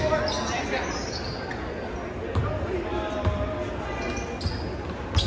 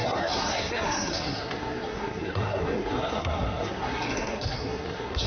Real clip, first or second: first